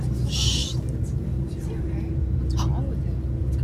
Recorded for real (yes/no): yes